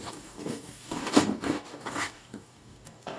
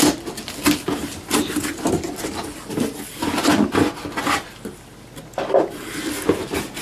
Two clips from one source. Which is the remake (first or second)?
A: first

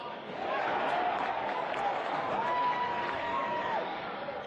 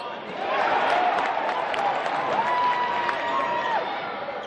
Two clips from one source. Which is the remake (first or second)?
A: first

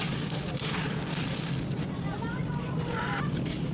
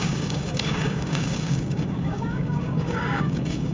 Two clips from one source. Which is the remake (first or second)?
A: second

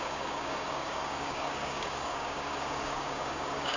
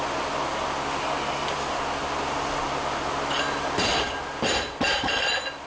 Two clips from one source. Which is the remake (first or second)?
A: first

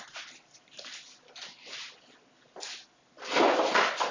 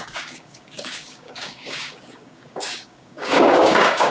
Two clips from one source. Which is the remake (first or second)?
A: second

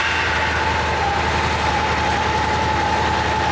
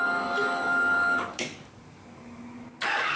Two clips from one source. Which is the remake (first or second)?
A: second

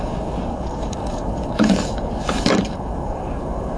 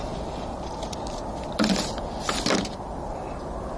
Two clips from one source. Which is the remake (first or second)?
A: first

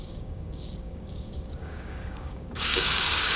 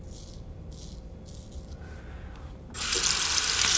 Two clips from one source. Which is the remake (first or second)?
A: first